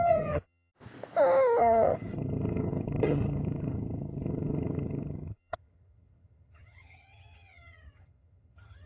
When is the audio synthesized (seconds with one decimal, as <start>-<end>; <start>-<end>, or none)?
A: 0.0-0.7; 1.6-8.9